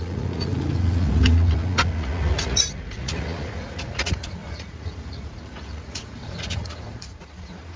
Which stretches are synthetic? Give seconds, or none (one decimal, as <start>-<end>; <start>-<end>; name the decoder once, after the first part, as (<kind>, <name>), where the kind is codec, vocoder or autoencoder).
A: 0.0-7.8 (vocoder, Vocos)